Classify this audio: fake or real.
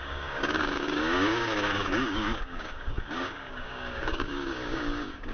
fake